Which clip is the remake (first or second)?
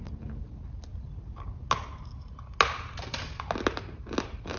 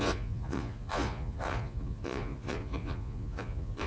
second